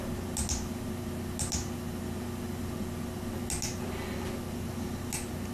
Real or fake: real